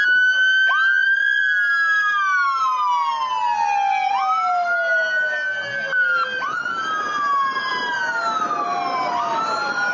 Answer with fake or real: real